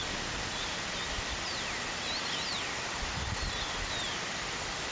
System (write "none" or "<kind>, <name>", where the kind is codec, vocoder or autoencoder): none